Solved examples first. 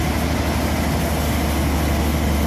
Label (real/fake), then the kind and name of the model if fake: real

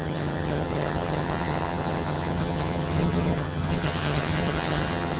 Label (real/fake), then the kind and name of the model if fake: fake, vocoder, HiFi-GAN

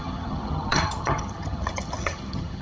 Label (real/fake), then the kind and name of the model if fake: fake, vocoder, HiFi-GAN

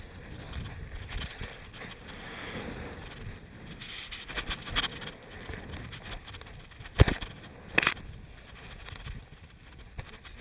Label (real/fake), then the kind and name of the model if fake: real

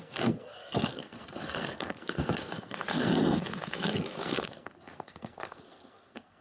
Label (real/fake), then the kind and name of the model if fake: fake, codec, SNAC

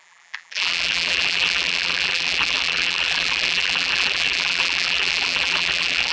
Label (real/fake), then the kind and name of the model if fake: fake, vocoder, BigVGAN v2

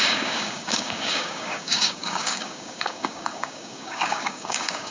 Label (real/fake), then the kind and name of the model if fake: fake, codec, DAC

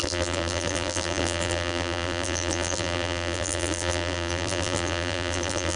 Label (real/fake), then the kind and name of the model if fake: fake, vocoder, BigVGAN v2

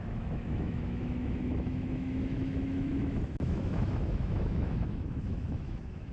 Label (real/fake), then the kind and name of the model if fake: fake, autoencoder, DAC-VAE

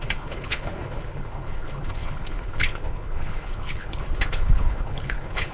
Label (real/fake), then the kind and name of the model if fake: fake, codec, HILCodec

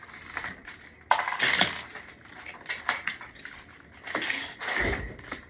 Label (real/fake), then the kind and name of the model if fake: real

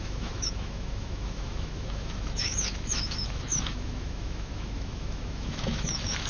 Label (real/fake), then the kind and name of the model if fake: fake, autoencoder, DAC-VAE